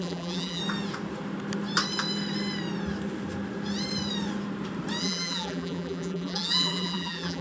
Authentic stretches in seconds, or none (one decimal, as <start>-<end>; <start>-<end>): 0.6-5.0